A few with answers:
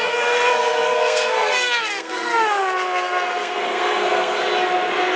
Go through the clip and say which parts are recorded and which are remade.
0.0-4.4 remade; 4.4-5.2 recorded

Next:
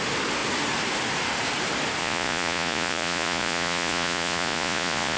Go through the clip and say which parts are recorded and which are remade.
0.0-2.0 recorded; 2.0-5.2 remade

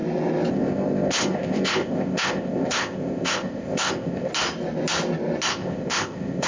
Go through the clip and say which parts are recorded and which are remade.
0.0-0.5 recorded; 0.5-4.3 remade; 4.3-5.5 recorded; 5.5-6.5 remade

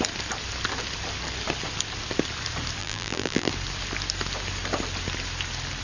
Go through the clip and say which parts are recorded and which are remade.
0.0-2.8 recorded; 2.8-3.5 remade; 3.5-5.8 recorded

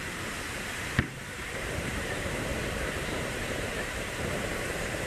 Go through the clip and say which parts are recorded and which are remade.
0.0-5.1 remade

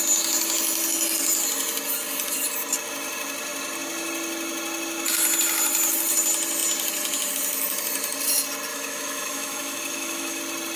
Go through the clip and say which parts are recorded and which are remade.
0.0-8.7 recorded; 8.7-10.4 remade; 10.4-10.8 recorded